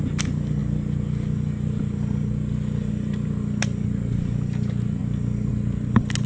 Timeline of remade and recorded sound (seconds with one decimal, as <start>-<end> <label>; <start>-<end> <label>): 0.0-6.3 recorded